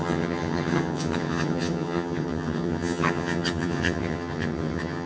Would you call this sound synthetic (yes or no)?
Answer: yes